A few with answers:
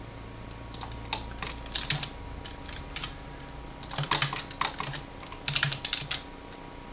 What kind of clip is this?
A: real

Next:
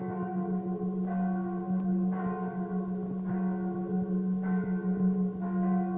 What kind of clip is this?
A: real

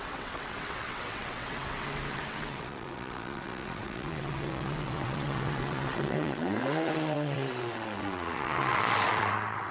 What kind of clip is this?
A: fake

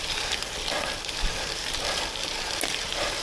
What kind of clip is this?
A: real